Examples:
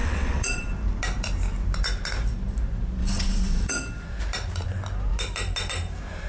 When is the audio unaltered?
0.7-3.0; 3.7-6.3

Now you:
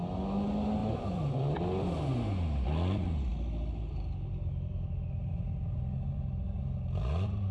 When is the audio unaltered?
0.0-0.8; 1.6-7.5

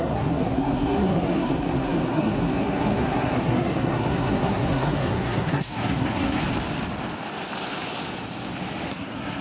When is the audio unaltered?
6.4-8.9

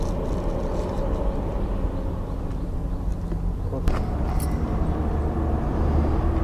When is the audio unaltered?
0.0-6.4

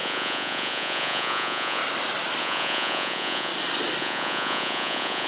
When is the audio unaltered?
1.8-2.4; 3.5-4.0